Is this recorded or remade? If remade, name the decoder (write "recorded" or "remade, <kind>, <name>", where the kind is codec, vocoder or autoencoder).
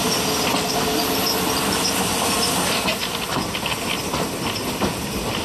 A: recorded